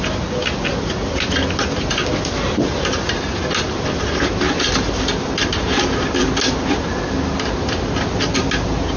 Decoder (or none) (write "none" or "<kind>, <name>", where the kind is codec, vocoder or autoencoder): none